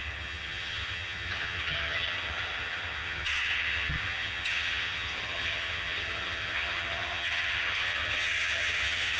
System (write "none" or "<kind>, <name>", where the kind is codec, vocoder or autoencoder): vocoder, HiFi-GAN